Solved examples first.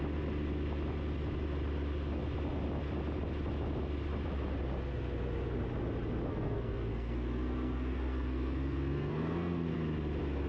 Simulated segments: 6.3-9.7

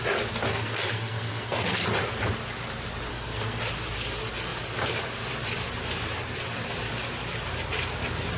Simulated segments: 0.5-1.8; 3.1-3.6

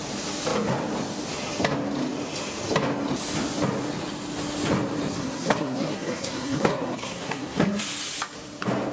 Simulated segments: 5.1-7.8

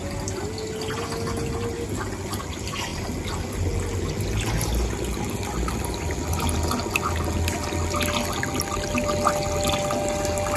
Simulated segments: none

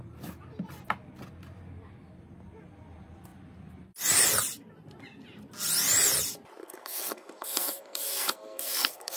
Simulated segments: 6.6-9.2

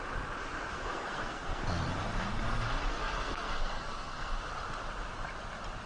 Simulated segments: 0.7-1.6; 2.9-4.4

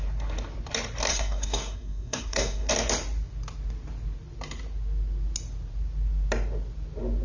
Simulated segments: 1.1-2.7